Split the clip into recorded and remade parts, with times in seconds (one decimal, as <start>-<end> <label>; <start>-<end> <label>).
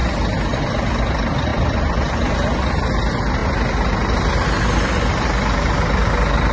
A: 0.0-6.5 recorded